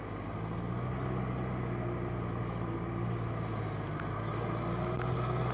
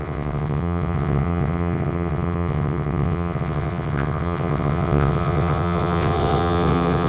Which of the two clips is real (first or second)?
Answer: first